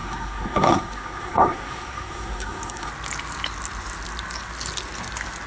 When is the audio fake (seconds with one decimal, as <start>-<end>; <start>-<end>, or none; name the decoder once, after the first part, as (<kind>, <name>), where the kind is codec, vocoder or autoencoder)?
0.0-2.9 (codec, SNAC)